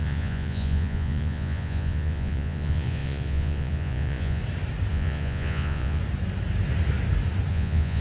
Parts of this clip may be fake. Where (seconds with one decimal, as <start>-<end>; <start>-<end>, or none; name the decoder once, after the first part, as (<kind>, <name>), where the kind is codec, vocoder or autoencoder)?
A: 0.0-4.4 (vocoder, Vocos); 4.9-6.0; 7.5-8.0